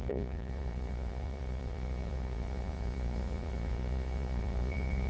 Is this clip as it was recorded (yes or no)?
no